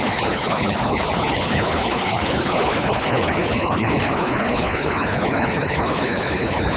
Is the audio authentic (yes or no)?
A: no